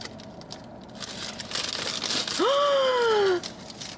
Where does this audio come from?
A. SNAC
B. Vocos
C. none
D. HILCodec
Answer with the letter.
C